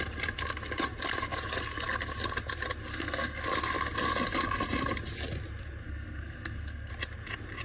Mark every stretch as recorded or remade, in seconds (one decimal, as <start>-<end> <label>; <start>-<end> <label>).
0.0-2.9 recorded; 2.9-3.4 remade; 3.4-5.8 recorded; 5.8-6.9 remade; 6.9-7.6 recorded